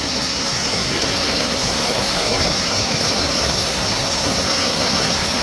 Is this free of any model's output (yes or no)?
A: no